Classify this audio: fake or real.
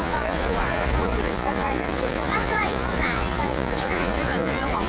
fake